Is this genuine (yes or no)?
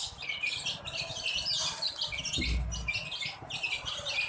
yes